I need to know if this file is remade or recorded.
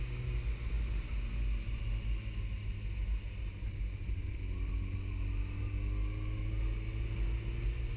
recorded